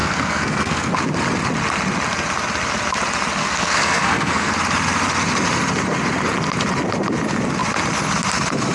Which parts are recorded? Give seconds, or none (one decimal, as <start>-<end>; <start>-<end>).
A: 0.9-3.4; 4.5-8.7